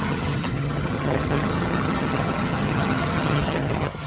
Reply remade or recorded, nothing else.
remade